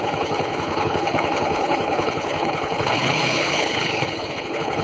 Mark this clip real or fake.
fake